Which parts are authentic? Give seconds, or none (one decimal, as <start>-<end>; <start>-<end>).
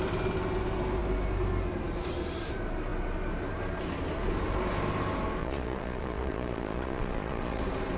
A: 0.0-5.4; 7.6-8.0